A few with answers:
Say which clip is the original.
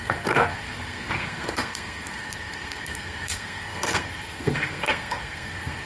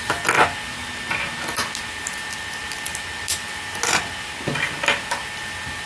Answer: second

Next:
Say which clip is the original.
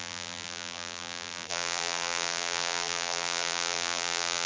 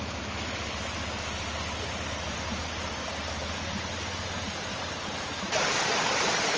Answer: second